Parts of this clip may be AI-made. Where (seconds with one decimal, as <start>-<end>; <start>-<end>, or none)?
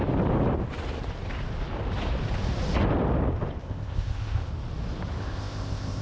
3.6-4.5; 5.2-6.0